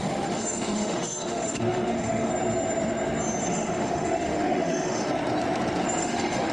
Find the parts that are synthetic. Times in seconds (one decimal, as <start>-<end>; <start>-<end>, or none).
0.0-2.3; 3.5-5.1; 6.0-6.5